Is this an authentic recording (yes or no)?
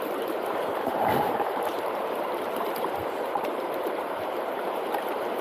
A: no